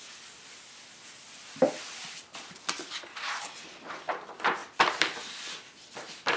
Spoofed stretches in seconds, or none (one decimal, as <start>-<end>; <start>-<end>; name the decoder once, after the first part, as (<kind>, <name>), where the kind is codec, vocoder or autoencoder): 4.6-5.4 (vocoder, BigVGAN v2)